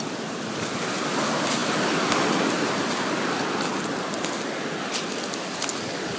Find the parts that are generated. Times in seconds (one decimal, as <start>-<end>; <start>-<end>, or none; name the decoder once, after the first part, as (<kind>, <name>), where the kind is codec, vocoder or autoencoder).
none